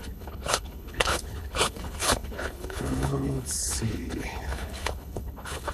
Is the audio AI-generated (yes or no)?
yes